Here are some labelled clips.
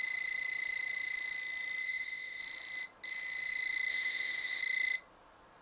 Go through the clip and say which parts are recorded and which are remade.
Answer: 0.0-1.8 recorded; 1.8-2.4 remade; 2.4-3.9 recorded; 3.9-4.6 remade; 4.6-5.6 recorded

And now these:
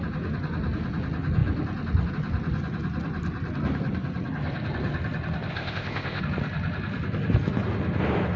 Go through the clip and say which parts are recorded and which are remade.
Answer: 0.0-5.5 recorded; 5.5-6.2 remade; 6.2-8.4 recorded

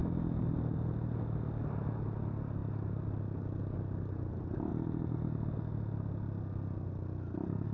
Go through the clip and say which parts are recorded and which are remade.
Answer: 0.0-7.7 recorded

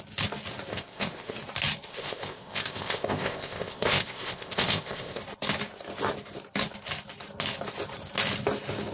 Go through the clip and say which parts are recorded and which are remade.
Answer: 0.0-0.7 recorded; 0.7-1.3 remade; 1.3-1.9 recorded; 1.9-5.2 remade; 5.2-8.9 recorded

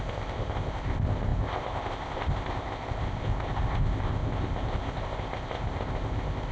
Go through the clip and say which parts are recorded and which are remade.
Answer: 0.0-6.5 remade